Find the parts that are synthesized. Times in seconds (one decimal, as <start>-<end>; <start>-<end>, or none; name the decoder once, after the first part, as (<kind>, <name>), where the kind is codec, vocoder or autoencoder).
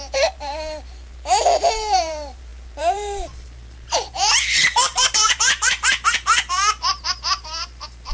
0.0-8.1 (vocoder, BigVGAN v2)